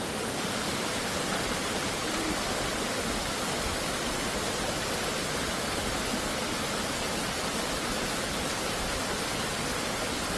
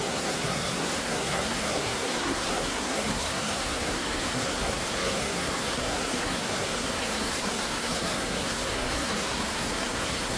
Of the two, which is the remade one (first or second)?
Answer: second